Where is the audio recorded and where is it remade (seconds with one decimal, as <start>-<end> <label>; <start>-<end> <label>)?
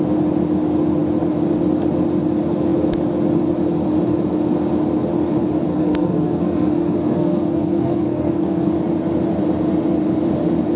0.0-5.7 recorded; 5.7-8.7 remade; 8.7-10.8 recorded